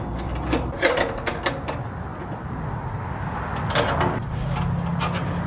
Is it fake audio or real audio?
real